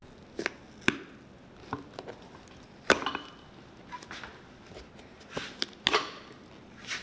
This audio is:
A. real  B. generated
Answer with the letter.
A